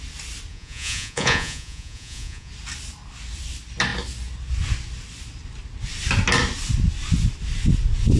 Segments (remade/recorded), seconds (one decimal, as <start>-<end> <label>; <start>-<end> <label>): 0.0-0.5 recorded; 0.5-2.5 remade; 2.5-8.2 recorded